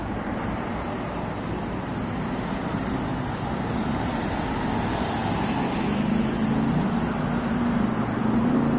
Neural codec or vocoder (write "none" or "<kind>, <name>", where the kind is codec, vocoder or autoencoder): none